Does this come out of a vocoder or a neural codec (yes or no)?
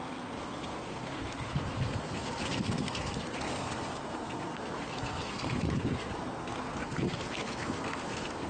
yes